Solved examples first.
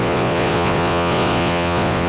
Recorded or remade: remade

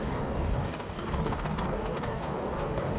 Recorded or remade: remade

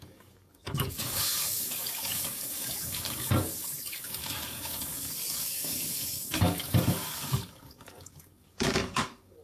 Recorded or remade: remade